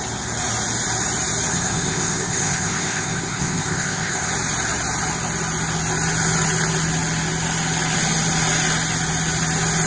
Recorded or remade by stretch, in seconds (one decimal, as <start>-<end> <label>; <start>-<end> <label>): 0.0-1.5 recorded; 1.5-4.3 remade; 4.3-9.9 recorded

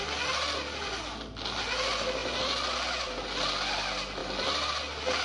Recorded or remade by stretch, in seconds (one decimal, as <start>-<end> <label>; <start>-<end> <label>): 0.0-5.2 recorded